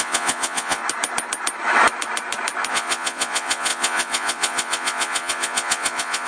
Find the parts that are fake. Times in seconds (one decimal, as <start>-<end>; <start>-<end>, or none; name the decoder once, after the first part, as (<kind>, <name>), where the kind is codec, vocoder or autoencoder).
0.0-0.8 (vocoder, Vocos); 2.7-6.3